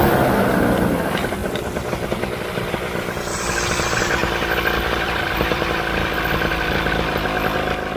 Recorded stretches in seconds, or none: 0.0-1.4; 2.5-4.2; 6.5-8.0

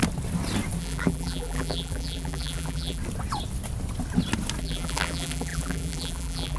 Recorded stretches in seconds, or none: 0.0-0.8; 3.0-4.6

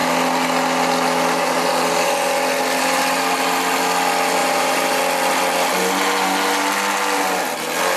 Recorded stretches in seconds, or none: 0.0-4.4; 5.0-8.0

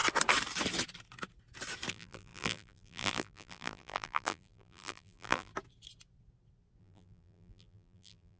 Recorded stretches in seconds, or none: 0.0-1.9; 5.5-6.8

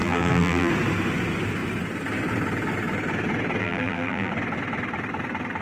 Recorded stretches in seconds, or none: 0.7-3.6; 4.3-5.6